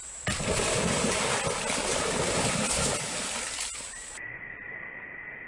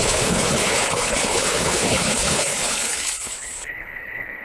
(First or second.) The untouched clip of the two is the first